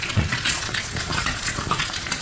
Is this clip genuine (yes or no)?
no